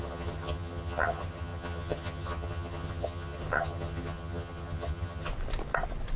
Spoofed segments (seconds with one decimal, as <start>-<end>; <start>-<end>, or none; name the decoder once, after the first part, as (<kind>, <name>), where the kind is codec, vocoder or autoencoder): 0.0-5.3 (vocoder, HiFi-GAN)